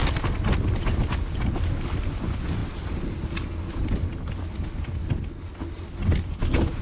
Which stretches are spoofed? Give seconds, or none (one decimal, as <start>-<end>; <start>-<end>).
2.0-2.6